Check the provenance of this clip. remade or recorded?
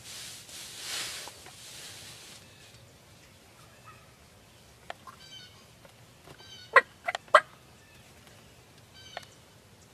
recorded